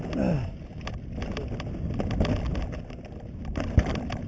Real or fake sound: real